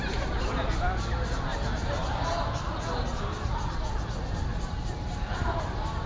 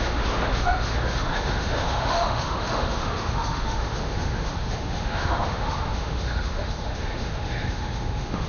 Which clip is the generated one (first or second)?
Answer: second